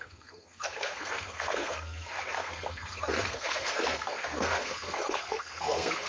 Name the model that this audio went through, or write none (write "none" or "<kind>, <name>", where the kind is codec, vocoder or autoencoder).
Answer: codec, SNAC